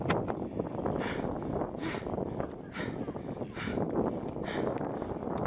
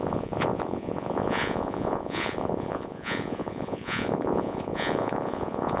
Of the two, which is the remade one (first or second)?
second